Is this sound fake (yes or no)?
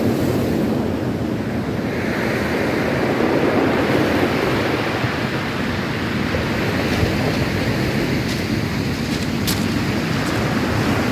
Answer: no